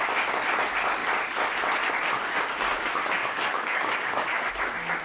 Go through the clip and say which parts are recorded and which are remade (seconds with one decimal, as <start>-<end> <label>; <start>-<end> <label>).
0.0-3.2 recorded; 3.2-4.5 remade; 4.5-5.0 recorded